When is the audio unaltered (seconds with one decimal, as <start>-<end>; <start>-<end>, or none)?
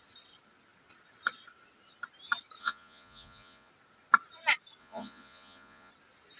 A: 0.0-2.6; 3.7-4.8; 5.9-6.4